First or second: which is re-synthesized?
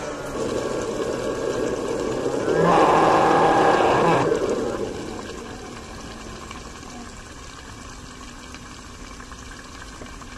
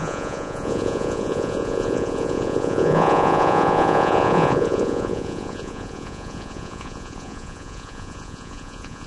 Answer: second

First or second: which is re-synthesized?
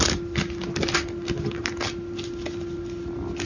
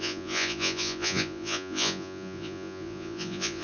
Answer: second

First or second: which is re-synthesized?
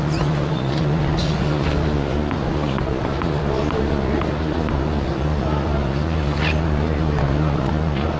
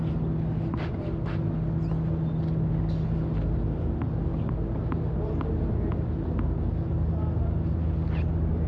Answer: first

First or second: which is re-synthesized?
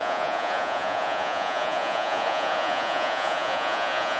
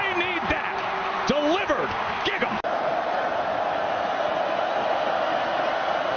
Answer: first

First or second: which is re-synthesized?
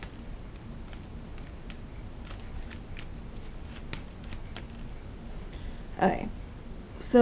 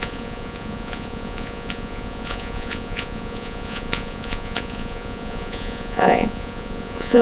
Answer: second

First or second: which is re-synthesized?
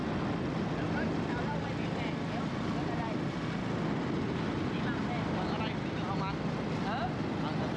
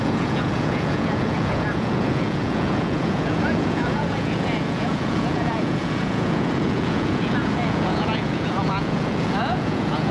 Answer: second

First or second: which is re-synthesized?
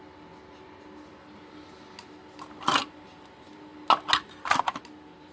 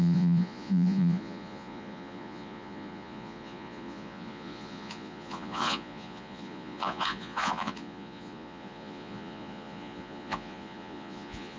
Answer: second